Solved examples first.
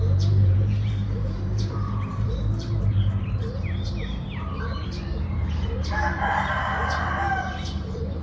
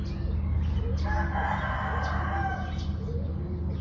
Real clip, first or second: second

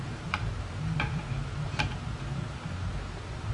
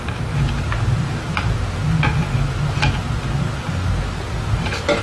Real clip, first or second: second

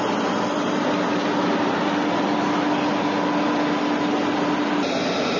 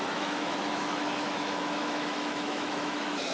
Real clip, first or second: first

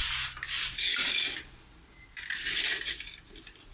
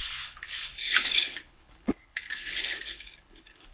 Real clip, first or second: first